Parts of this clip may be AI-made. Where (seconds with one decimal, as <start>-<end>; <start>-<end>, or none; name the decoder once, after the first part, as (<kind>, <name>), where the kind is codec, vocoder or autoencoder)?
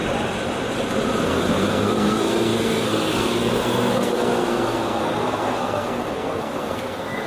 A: 1.2-7.3 (codec, SNAC)